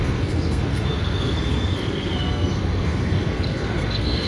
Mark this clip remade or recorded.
remade